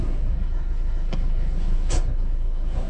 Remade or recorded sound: remade